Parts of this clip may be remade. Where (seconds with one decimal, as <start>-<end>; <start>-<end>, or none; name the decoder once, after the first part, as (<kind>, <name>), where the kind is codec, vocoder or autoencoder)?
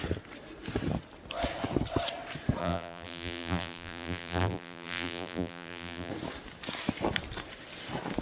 2.6-6.1 (vocoder, BigVGAN v2)